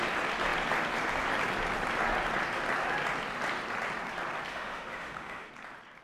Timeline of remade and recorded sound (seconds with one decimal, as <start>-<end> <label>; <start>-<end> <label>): 0.0-4.5 recorded; 4.5-5.5 remade; 5.5-6.0 recorded